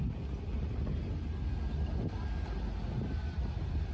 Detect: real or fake real